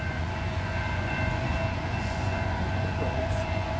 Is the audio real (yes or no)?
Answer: no